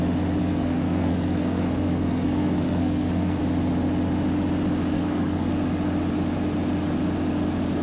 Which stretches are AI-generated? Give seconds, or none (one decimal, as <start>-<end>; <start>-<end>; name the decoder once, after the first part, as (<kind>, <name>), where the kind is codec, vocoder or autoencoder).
0.4-3.4 (codec, SNAC); 4.9-5.5